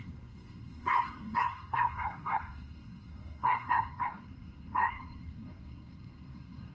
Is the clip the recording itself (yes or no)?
no